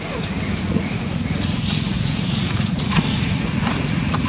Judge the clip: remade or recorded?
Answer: remade